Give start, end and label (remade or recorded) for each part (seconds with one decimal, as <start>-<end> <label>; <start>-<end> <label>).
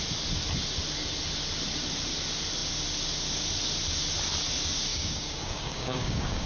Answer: 0.0-4.9 recorded; 4.9-6.5 remade